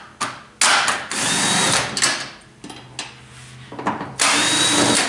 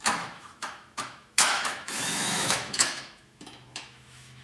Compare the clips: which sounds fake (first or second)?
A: second